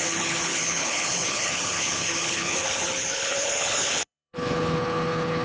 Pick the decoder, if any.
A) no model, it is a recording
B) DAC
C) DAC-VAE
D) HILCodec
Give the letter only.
D